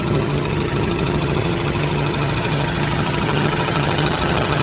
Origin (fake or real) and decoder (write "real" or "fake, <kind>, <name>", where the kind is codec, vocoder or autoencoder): fake, vocoder, HiFi-GAN